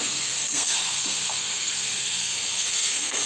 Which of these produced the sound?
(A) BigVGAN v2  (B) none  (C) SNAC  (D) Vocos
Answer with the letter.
C